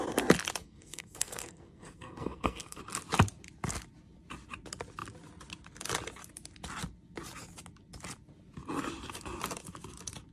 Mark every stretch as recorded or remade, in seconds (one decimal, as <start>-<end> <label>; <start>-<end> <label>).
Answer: 0.0-0.6 recorded; 0.6-2.8 remade; 2.8-10.3 recorded